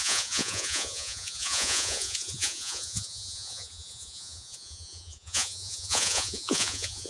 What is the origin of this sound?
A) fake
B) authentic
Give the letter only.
A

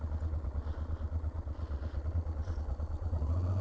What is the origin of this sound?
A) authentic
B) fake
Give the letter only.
B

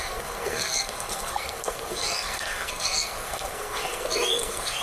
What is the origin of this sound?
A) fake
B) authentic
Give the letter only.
A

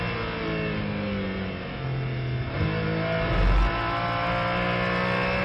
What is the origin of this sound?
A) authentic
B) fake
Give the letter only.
A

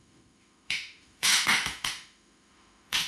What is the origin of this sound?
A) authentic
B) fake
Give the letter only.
B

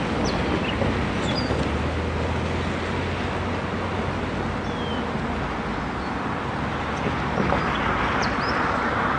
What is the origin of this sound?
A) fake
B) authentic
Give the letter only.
B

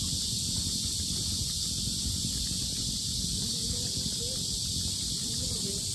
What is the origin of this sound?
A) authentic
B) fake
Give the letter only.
A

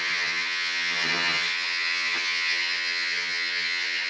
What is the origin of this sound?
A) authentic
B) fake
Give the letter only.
B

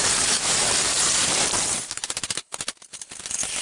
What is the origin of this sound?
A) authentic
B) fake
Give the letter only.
B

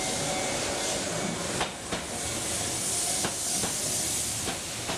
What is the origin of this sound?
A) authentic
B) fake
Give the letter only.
A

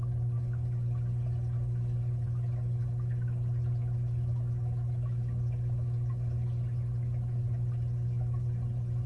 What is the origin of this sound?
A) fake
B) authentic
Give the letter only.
B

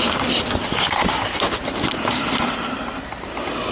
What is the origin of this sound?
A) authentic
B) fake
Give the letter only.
A